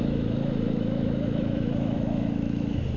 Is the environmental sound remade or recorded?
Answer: remade